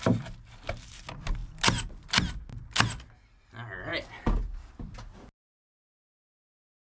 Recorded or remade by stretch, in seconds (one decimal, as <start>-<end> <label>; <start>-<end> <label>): 0.0-7.0 recorded